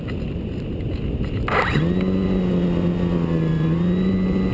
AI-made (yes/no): no